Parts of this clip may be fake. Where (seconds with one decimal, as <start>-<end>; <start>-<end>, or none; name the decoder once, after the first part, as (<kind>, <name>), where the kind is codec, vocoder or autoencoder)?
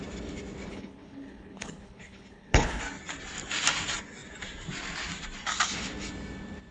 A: 0.7-2.8 (codec, HILCodec)